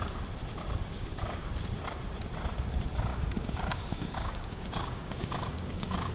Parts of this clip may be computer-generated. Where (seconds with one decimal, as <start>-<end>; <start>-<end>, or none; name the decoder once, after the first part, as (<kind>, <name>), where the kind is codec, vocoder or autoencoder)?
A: 0.9-1.5 (codec, DAC); 3.1-6.1